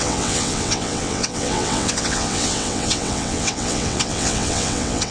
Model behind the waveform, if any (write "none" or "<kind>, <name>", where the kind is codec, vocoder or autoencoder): vocoder, WaveNeXt